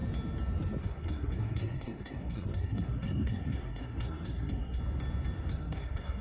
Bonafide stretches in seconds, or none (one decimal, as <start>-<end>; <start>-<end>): 0.0-0.8; 4.8-5.5